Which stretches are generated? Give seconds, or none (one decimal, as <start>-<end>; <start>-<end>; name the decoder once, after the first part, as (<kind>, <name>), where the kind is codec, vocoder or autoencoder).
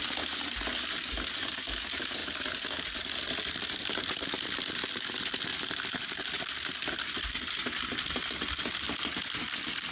none